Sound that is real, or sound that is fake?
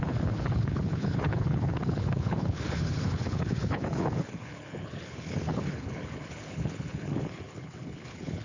fake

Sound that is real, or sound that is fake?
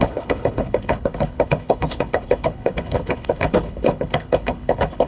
fake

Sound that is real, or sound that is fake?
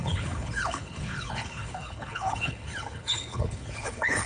fake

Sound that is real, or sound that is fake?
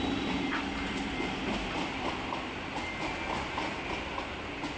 real